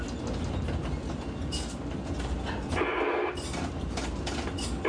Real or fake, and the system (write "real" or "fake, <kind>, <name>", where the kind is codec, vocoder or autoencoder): real